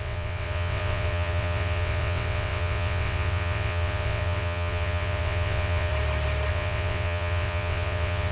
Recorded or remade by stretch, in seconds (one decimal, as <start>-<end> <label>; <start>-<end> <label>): 0.0-5.9 remade; 5.9-6.5 recorded; 6.5-8.3 remade

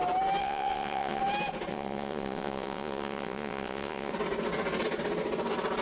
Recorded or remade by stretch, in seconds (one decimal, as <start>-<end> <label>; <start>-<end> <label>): 0.0-0.4 recorded; 0.4-1.2 remade; 1.2-1.7 recorded; 1.7-4.1 remade; 4.1-5.8 recorded